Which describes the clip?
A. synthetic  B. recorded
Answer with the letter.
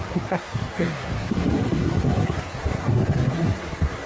A